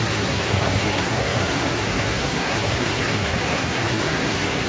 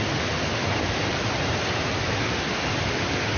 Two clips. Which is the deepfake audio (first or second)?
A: first